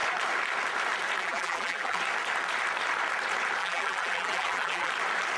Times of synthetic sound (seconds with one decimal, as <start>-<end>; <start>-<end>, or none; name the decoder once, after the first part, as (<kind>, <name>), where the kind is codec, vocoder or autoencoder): 1.2-2.0 (vocoder, BigVGAN v2); 3.6-4.9